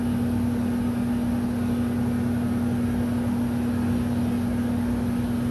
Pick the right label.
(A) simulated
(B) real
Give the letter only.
B